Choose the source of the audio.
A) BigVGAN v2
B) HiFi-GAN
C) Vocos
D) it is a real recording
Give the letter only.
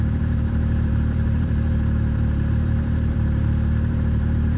A